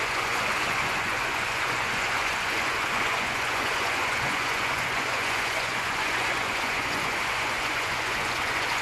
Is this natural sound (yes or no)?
no